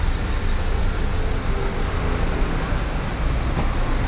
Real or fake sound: real